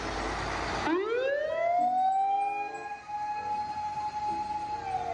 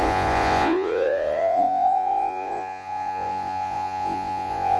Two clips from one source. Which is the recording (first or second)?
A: first